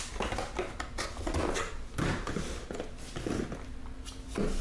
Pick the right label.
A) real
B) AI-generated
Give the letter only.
A